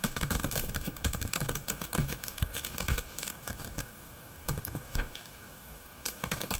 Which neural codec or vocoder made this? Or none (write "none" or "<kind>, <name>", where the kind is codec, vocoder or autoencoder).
codec, DAC